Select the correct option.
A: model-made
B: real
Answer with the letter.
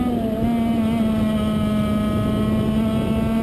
B